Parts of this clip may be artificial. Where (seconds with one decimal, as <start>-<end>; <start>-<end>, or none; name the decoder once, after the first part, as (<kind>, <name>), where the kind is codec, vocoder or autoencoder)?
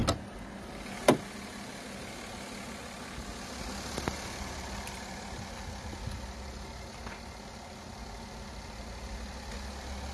none